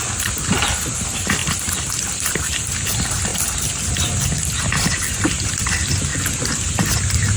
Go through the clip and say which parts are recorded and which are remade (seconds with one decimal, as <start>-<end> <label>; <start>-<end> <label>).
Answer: 0.0-3.3 remade; 3.3-4.2 recorded; 4.2-6.1 remade; 6.1-7.4 recorded